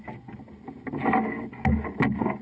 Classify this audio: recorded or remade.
recorded